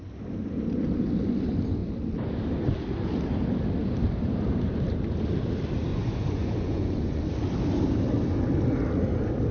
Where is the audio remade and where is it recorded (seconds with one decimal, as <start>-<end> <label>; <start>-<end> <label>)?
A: 0.0-5.9 recorded; 5.9-7.2 remade; 7.2-9.5 recorded